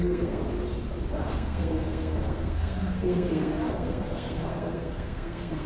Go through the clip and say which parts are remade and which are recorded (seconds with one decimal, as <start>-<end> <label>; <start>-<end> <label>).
0.0-0.4 remade; 0.4-1.1 recorded; 1.1-5.7 remade